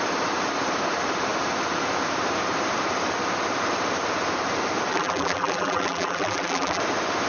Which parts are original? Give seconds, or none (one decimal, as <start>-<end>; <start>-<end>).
0.0-4.9; 6.8-7.3